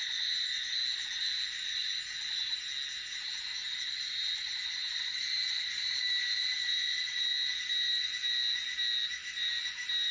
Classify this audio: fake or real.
real